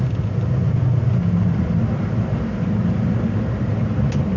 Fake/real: real